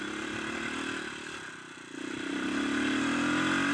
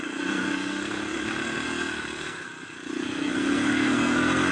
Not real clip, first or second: second